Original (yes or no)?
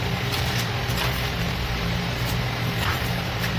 no